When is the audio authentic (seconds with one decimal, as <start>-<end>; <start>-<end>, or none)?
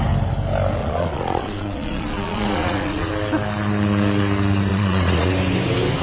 0.0-0.8; 3.1-4.7; 5.3-6.0